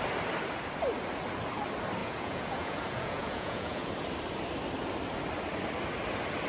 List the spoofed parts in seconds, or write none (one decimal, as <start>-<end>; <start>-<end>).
2.0-3.9

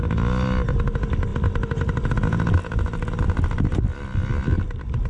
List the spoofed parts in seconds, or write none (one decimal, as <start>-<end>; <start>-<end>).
none

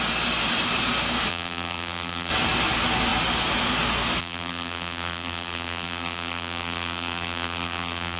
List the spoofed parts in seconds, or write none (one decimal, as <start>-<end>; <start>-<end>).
1.3-2.3; 4.2-8.2

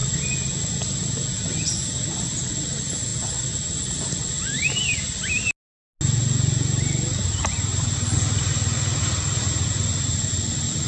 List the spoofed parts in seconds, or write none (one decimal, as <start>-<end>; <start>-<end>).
none